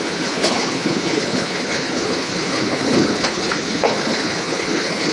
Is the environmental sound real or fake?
fake